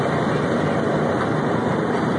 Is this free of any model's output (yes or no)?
no